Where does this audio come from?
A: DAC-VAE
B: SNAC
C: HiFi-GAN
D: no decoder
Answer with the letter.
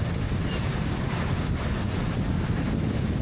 D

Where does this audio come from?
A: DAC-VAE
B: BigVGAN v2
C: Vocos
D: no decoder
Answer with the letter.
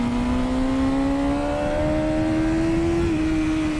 D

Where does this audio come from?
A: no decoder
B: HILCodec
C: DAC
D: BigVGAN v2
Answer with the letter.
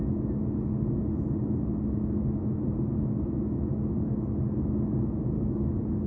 A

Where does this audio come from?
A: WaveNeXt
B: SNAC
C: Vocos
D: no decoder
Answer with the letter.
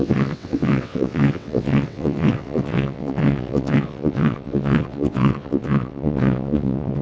A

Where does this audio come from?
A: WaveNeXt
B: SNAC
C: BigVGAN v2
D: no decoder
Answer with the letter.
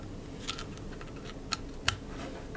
D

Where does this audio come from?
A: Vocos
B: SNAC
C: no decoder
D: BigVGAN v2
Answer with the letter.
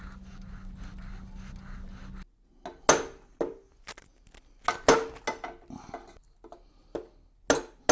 C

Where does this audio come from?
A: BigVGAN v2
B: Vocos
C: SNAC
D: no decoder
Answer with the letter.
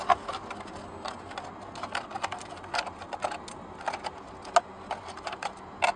D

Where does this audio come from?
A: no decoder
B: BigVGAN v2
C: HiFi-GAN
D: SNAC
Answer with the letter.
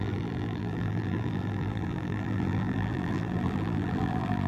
B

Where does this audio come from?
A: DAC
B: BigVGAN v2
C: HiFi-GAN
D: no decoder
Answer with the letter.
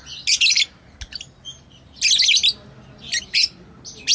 D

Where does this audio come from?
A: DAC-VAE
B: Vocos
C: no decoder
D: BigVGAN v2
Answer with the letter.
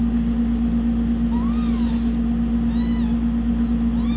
C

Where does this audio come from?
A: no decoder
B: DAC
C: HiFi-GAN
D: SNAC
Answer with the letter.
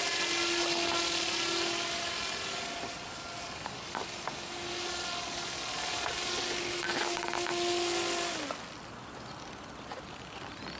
A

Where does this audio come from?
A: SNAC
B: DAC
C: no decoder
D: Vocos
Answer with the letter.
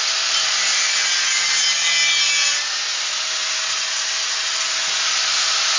C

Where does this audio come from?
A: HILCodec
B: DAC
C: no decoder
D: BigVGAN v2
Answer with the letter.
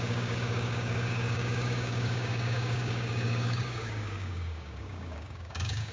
B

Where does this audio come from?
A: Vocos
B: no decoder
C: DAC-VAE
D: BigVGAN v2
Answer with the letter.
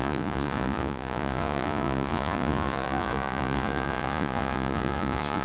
A